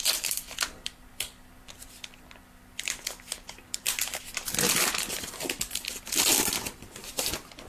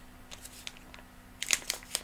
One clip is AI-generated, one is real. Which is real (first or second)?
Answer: second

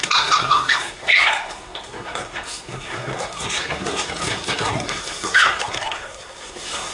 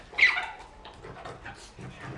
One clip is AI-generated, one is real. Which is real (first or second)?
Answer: second